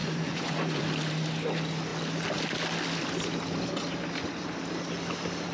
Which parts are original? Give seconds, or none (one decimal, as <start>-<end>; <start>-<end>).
0.8-5.5